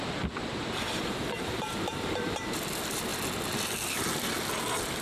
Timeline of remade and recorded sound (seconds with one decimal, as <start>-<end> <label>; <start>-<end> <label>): 0.0-0.4 recorded; 0.4-2.6 remade; 2.6-5.0 recorded